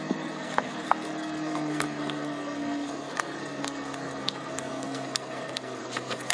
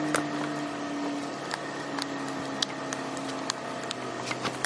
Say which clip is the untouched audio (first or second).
second